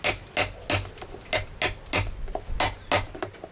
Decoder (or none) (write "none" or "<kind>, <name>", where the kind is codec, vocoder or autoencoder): none